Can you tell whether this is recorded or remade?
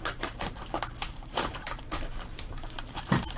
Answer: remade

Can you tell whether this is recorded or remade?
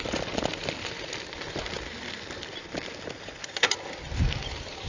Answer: remade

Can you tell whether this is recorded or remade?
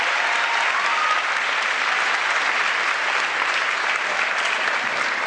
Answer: recorded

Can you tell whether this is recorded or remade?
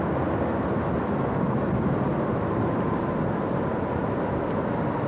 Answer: recorded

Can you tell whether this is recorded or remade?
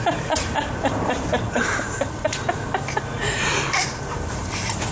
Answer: remade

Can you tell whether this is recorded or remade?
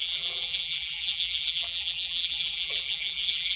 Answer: remade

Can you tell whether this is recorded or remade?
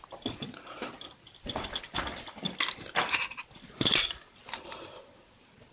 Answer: recorded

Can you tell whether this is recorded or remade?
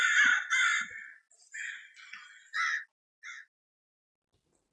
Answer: recorded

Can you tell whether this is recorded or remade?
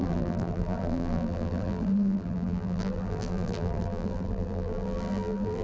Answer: remade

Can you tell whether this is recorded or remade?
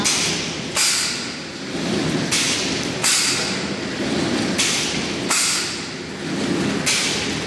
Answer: recorded